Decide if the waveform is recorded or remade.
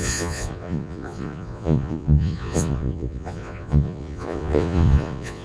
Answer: remade